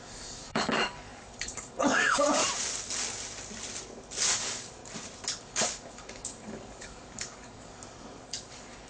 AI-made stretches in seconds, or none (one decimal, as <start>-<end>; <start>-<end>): 0.0-2.4; 4.3-4.8; 5.4-8.9